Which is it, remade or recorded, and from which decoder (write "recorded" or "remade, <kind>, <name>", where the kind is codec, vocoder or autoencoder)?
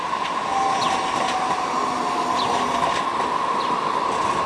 recorded